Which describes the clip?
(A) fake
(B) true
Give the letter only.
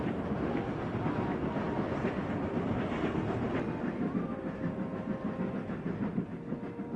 B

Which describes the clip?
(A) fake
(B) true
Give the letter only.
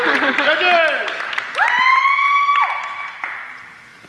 B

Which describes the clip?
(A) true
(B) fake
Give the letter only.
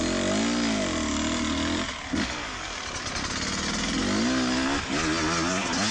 A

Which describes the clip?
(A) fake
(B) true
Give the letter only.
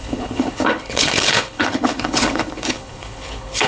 A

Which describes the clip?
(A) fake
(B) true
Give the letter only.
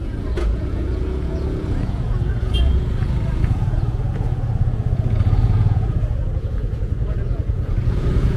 A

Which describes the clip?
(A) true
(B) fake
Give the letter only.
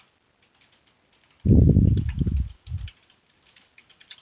A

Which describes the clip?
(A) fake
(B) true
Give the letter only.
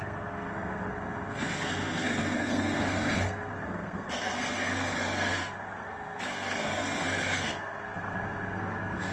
A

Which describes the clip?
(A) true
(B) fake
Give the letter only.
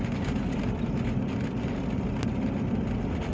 A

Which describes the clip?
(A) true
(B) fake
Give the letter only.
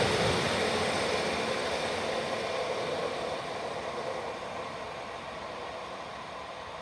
B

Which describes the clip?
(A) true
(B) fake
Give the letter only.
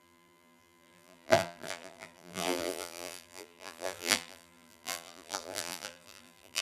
B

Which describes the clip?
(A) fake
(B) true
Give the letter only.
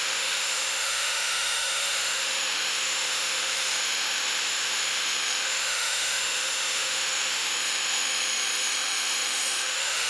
A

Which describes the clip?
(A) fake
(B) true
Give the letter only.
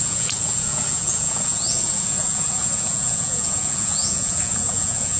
A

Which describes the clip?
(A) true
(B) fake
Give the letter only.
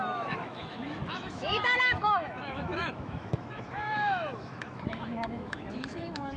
B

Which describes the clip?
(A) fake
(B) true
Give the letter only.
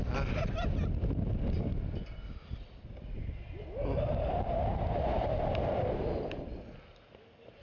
B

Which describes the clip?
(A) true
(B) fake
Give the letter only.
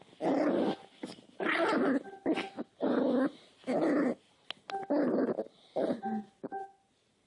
A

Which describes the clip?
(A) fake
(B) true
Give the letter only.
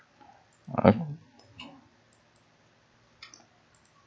B